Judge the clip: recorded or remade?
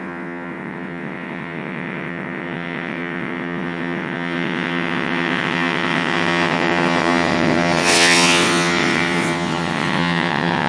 remade